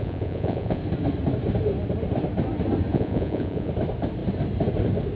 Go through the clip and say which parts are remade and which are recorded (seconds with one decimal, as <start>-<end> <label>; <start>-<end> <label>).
0.0-0.8 remade; 0.8-2.9 recorded; 2.9-3.7 remade; 3.7-5.2 recorded

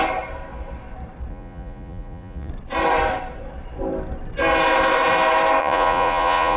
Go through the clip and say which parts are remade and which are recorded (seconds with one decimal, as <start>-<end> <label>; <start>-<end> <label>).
0.0-1.3 recorded; 1.3-2.5 remade; 2.5-5.6 recorded; 5.6-6.6 remade

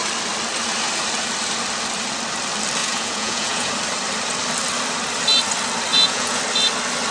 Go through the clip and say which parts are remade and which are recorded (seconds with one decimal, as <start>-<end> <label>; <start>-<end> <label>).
0.0-2.8 recorded; 2.8-3.7 remade; 3.7-5.9 recorded; 5.9-6.4 remade; 6.4-7.1 recorded

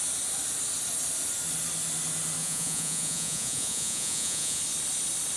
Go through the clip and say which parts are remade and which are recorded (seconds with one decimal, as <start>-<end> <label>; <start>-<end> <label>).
0.0-2.4 recorded; 2.4-4.6 remade; 4.6-5.4 recorded

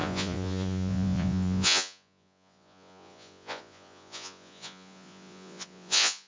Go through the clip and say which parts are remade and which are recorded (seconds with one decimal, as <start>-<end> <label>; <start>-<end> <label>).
0.0-6.3 remade

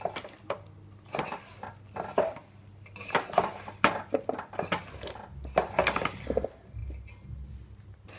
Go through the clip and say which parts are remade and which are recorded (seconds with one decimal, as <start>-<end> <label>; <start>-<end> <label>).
0.0-8.2 recorded

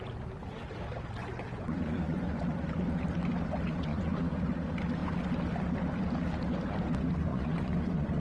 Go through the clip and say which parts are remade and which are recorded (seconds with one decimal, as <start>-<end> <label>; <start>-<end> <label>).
0.0-1.2 recorded; 1.2-2.4 remade; 2.4-3.9 recorded; 3.9-4.4 remade; 4.4-7.3 recorded; 7.3-8.2 remade

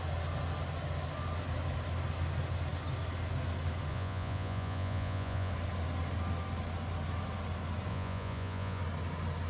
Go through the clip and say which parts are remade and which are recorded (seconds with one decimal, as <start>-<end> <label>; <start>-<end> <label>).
0.0-3.9 recorded; 3.9-5.5 remade; 5.5-7.9 recorded; 7.9-8.8 remade; 8.8-9.5 recorded